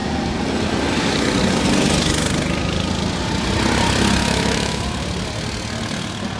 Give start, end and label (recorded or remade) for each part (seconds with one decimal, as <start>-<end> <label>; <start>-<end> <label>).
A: 0.0-4.2 recorded; 4.2-4.8 remade; 4.8-6.4 recorded